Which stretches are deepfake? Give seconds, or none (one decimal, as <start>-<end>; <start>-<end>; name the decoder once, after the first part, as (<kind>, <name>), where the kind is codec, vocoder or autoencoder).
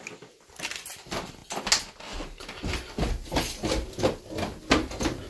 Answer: none